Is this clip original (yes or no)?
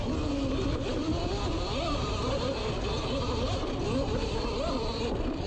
yes